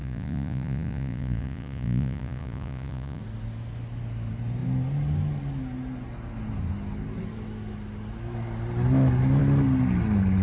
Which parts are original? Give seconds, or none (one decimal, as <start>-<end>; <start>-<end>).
3.2-10.4